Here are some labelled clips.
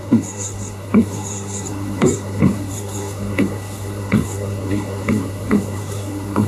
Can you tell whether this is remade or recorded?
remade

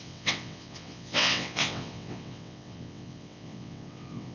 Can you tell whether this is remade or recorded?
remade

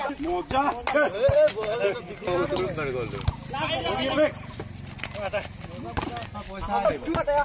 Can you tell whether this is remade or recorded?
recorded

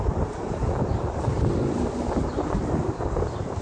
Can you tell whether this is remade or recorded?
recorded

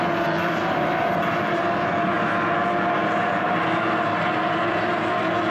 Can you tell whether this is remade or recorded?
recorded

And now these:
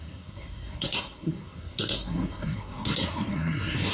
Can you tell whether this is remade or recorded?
remade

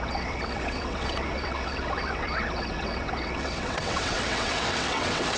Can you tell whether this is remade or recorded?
remade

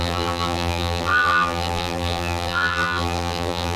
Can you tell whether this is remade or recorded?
remade